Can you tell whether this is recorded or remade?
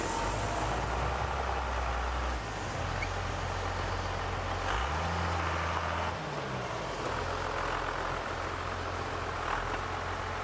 recorded